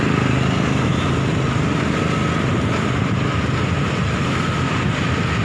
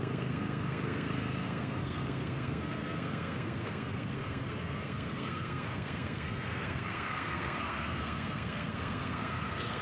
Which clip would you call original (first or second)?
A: first